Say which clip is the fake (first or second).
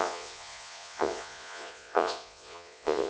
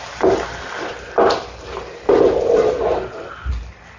first